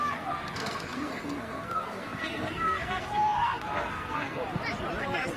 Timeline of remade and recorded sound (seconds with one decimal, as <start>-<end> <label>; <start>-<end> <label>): 0.0-4.4 remade; 4.4-5.0 recorded; 5.0-5.4 remade